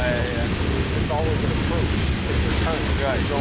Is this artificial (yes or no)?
no